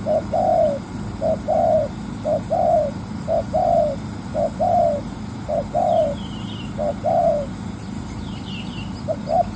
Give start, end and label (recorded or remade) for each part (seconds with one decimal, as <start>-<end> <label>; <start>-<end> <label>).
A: 0.0-9.6 recorded